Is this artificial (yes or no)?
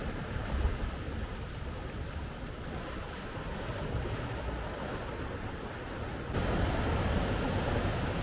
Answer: no